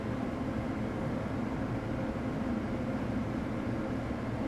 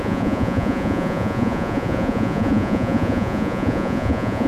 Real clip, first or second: first